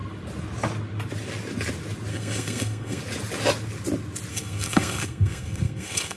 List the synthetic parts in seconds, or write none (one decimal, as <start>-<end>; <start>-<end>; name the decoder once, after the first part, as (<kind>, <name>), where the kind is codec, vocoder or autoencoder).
2.1-3.0 (codec, SNAC); 4.3-6.2